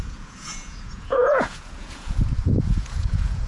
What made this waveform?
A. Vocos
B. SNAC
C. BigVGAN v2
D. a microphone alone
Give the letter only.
A